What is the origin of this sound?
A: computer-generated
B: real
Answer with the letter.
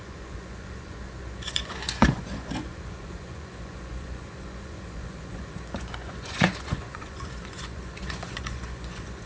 A